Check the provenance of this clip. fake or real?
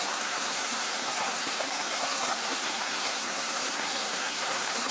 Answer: fake